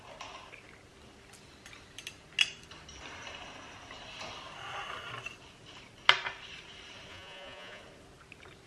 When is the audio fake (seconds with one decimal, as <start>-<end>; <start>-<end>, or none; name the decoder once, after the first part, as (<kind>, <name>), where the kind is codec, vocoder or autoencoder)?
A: 7.1-7.8 (vocoder, Vocos)